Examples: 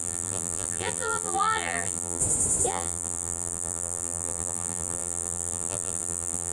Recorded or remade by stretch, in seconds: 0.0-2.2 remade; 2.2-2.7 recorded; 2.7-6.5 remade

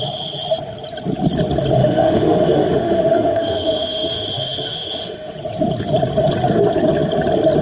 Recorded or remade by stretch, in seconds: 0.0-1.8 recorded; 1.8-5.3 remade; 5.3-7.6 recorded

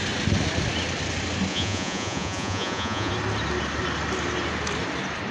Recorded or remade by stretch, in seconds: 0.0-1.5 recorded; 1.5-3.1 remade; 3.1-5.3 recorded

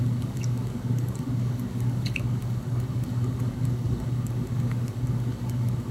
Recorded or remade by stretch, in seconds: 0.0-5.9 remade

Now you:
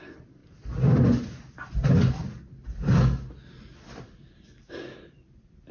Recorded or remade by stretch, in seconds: 0.0-0.4 remade; 0.4-3.7 recorded; 3.7-5.7 remade

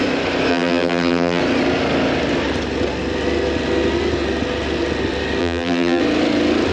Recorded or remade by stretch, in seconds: 0.0-0.5 recorded; 0.5-1.4 remade; 1.4-5.4 recorded; 5.4-6.0 remade; 6.0-6.7 recorded

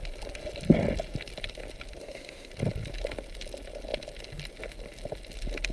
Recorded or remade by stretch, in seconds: 0.0-2.0 recorded; 2.0-2.5 remade; 2.5-5.7 recorded